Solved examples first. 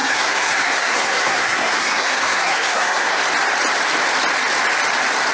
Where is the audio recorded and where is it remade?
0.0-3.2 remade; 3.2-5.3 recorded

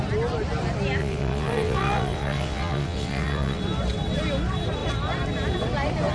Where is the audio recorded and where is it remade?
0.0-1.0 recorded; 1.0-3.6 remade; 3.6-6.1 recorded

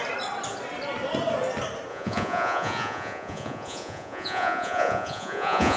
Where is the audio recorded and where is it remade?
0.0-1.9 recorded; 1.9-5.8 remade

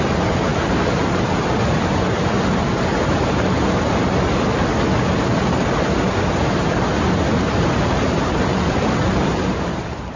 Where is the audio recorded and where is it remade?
0.0-0.5 recorded; 0.5-1.8 remade; 1.8-7.3 recorded; 7.3-10.2 remade

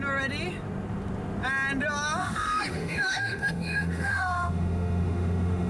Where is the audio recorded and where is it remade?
0.0-2.2 recorded; 2.2-5.7 remade

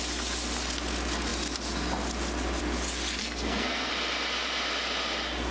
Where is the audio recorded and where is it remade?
0.0-3.2 recorded; 3.2-3.9 remade; 3.9-5.5 recorded

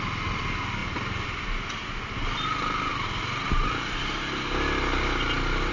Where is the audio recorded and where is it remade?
0.0-5.7 recorded